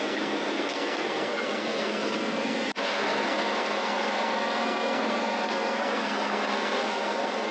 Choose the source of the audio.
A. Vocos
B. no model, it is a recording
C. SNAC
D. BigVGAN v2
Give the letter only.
C